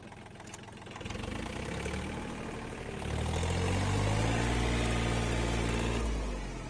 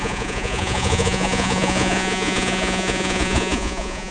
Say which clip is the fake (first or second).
second